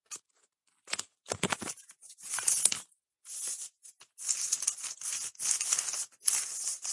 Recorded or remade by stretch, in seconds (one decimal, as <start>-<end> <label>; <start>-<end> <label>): 0.0-6.9 recorded

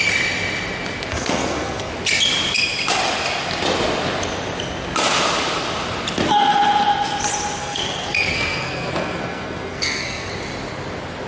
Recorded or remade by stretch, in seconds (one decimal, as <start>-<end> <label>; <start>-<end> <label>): 0.0-1.1 recorded; 1.1-1.9 remade; 1.9-7.6 recorded; 7.6-10.3 remade; 10.3-11.3 recorded